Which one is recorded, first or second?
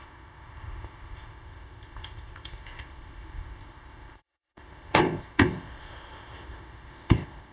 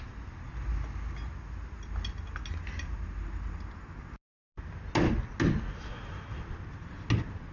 second